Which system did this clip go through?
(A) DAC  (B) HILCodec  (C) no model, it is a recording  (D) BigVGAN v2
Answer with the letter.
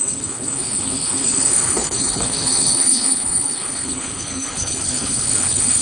B